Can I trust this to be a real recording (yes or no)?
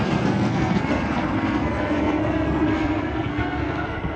no